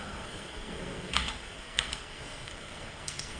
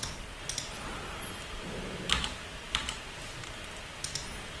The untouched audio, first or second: second